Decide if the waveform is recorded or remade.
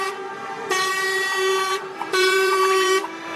remade